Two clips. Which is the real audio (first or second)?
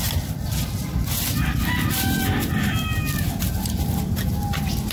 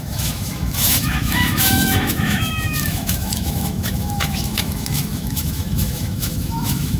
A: first